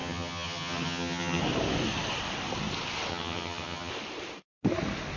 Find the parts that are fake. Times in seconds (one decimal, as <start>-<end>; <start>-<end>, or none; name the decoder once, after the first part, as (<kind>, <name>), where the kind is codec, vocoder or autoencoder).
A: 0.0-1.4 (vocoder, HiFi-GAN); 3.1-3.9